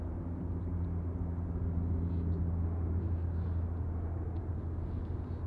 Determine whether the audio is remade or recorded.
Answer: recorded